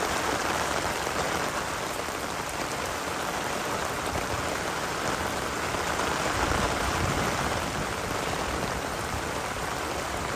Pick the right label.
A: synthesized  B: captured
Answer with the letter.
A